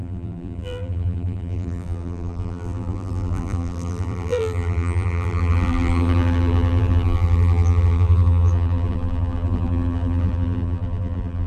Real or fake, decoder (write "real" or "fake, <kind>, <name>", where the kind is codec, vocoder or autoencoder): fake, vocoder, BigVGAN v2